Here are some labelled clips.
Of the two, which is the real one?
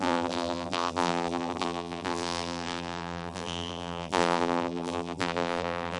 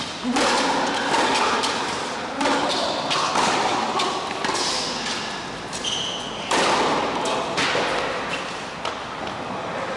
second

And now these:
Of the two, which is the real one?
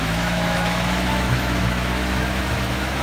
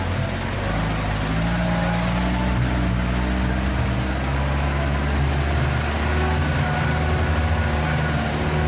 second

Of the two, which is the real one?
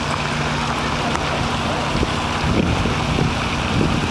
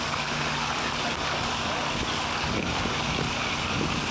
first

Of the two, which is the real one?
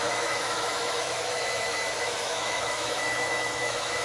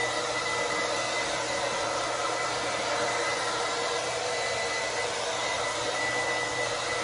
second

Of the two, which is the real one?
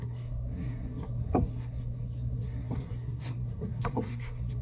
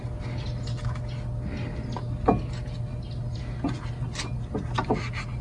second